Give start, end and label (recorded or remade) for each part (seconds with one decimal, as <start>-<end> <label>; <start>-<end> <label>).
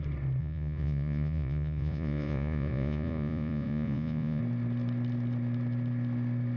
0.0-0.4 recorded; 0.4-4.4 remade; 4.4-6.6 recorded